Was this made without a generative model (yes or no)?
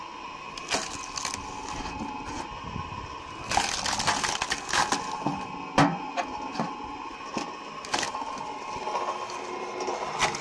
yes